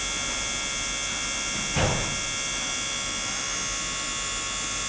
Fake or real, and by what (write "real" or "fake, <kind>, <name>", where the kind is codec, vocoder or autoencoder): real